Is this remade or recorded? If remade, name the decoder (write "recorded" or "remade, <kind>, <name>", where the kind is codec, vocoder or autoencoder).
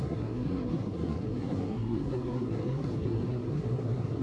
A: remade, codec, SNAC